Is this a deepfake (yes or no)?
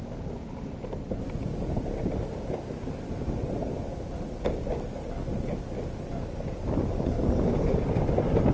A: no